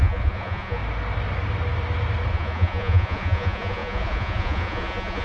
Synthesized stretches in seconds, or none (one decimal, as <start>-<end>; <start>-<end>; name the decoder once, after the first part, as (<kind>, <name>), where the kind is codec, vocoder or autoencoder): 0.0-0.8 (vocoder, Vocos); 2.3-5.2